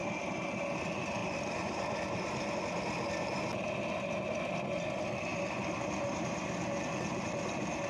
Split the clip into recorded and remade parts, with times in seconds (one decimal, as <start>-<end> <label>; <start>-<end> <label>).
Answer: 0.0-0.6 remade; 0.6-1.2 recorded; 1.2-2.6 remade; 2.6-7.9 recorded